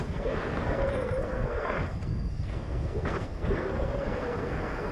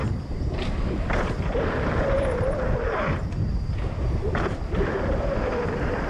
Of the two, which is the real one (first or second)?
second